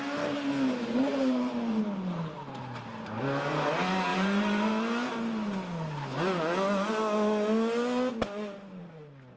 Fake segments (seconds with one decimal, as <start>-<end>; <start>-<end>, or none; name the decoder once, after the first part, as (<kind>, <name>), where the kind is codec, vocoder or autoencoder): 1.1-1.8 (vocoder, BigVGAN v2); 4.1-4.7